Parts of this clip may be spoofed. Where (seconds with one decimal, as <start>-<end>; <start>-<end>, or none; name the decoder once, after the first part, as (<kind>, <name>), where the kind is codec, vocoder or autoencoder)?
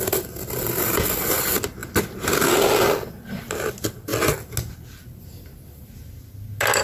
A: none